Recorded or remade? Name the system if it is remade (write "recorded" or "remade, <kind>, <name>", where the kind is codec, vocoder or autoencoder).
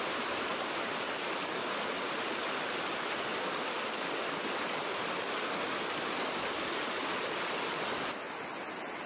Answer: recorded